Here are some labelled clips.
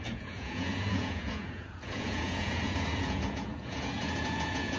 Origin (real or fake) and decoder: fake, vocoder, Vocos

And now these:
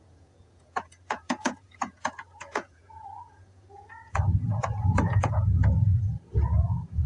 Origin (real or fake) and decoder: fake, vocoder, Vocos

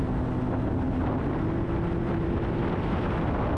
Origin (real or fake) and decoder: real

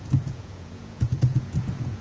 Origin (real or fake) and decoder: fake, vocoder, Vocos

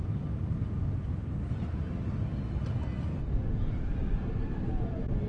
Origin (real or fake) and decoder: real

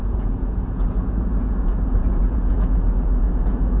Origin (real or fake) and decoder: fake, vocoder, Vocos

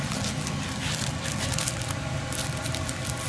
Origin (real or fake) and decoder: real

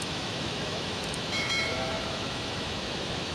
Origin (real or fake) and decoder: fake, autoencoder, DAC-VAE